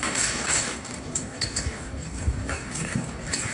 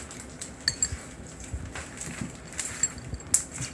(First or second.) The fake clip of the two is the first